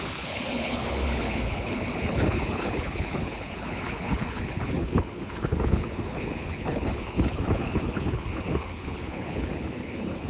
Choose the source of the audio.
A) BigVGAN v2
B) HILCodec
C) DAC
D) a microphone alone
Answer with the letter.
B